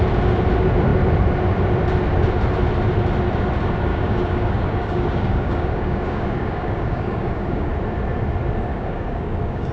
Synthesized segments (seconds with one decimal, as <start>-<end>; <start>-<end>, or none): 3.9-7.7; 8.7-9.7